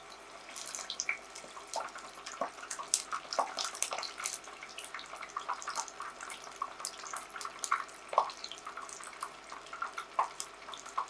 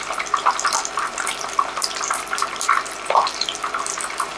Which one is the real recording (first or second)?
first